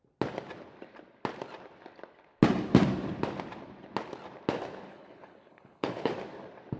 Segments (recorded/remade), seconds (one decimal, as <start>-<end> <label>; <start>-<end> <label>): 0.0-4.9 recorded; 4.9-6.1 remade; 6.1-6.8 recorded